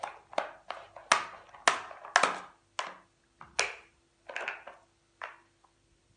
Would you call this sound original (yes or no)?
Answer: yes